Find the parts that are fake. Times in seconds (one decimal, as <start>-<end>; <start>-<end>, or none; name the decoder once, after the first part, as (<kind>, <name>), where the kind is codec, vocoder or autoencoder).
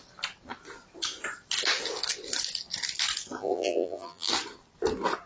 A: 3.4-4.3 (vocoder, BigVGAN v2)